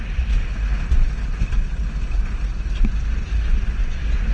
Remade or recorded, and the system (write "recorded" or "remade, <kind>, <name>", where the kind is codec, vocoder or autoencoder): recorded